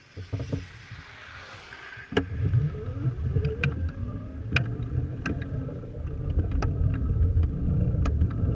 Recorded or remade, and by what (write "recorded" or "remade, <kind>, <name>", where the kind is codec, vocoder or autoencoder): recorded